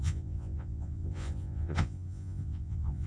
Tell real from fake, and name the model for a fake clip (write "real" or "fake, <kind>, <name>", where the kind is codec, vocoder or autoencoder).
fake, vocoder, Vocos